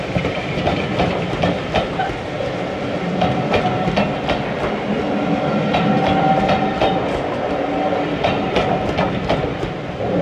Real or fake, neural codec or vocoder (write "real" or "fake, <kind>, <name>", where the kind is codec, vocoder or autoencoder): real